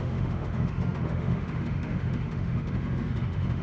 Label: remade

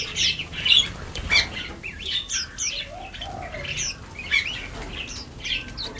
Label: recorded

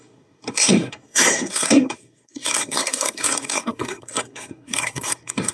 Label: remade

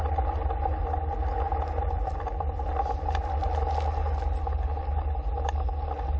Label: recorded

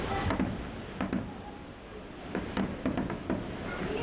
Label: recorded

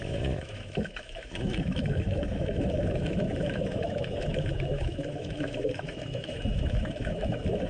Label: remade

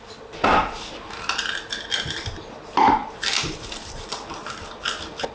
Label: remade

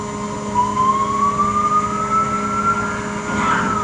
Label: recorded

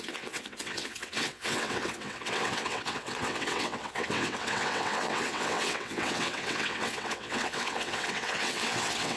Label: remade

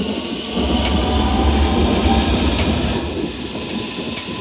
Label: recorded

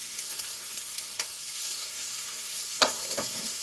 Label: remade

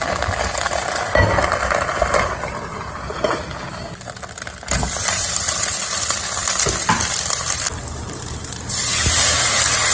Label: recorded